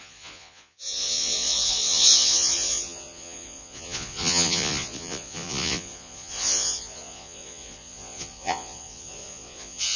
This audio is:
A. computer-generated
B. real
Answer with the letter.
A